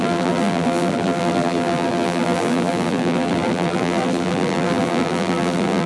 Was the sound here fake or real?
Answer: fake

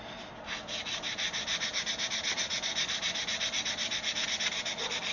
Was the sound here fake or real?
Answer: real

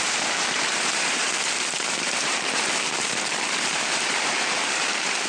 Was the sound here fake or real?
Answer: fake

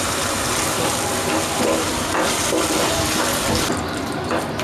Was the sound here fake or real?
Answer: fake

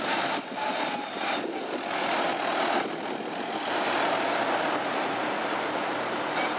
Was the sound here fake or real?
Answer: real